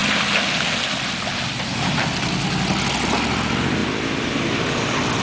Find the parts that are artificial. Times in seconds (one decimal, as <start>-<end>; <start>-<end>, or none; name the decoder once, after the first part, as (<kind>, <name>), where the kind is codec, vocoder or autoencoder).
none